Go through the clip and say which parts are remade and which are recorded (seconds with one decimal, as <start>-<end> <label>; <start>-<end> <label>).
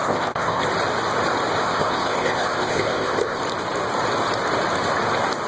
0.0-0.6 remade; 0.6-1.6 recorded; 1.6-3.4 remade; 3.4-5.5 recorded